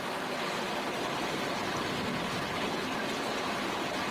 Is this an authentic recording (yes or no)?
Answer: yes